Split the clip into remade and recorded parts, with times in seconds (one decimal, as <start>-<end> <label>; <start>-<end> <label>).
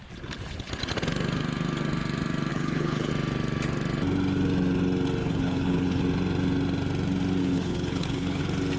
0.0-2.5 recorded; 2.5-3.1 remade; 3.1-5.2 recorded; 5.2-6.0 remade; 6.0-7.4 recorded; 7.4-8.4 remade; 8.4-8.8 recorded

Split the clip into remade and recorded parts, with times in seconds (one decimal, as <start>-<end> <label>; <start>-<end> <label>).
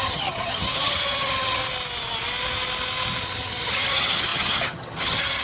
0.0-1.6 remade; 1.6-3.2 recorded; 3.2-5.4 remade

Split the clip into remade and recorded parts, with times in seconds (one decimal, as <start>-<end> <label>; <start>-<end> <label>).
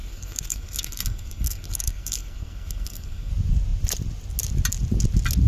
0.0-3.3 remade; 3.3-5.5 recorded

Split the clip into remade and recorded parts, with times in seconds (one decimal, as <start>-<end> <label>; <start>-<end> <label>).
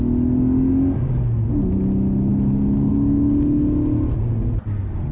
0.0-5.1 recorded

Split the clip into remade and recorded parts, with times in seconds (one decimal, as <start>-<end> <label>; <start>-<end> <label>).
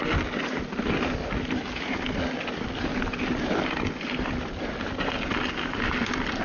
0.0-6.4 recorded